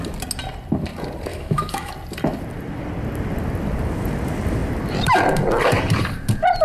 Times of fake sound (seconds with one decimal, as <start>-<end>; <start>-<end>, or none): 1.3-1.9